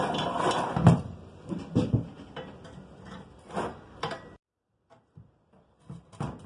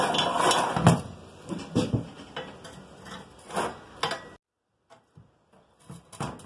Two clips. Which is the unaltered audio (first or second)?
second